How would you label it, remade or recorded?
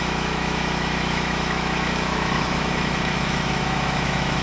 remade